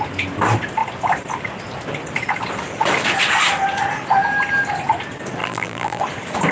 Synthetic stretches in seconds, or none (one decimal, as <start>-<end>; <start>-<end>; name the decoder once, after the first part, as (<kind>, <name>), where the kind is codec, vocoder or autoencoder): 5.4-6.0 (vocoder, BigVGAN v2)